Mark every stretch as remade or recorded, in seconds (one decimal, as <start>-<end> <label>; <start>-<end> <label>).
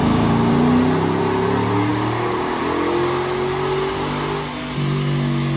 0.0-0.5 remade; 0.5-1.9 recorded; 1.9-2.6 remade; 2.6-5.6 recorded